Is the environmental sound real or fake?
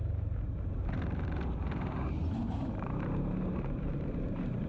fake